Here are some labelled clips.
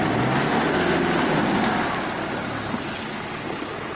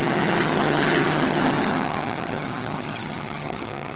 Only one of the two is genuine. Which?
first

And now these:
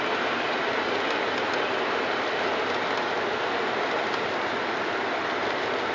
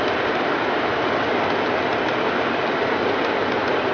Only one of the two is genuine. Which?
first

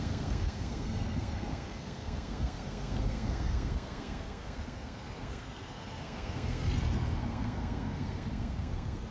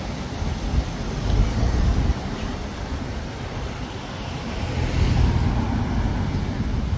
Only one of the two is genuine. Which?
second